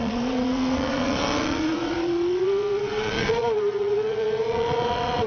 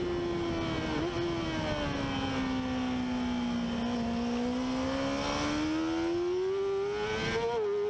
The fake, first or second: first